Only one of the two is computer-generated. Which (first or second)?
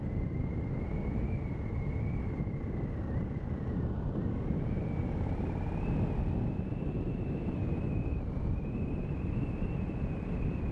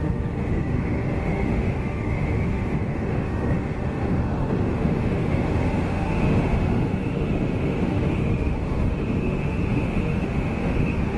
second